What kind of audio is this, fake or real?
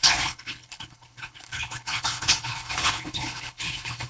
fake